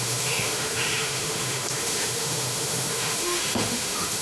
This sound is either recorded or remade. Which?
remade